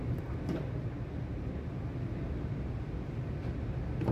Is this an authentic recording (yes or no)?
yes